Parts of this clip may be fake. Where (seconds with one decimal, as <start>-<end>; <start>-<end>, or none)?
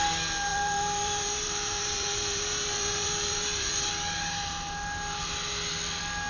0.5-3.9